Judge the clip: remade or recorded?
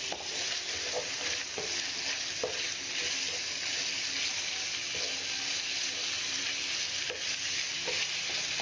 recorded